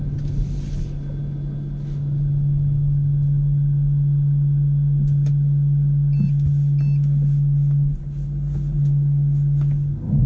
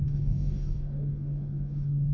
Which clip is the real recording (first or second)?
first